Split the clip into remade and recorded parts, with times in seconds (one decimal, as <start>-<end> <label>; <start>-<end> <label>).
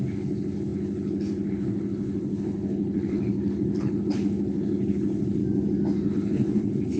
0.0-5.4 remade; 5.4-6.1 recorded; 6.1-7.0 remade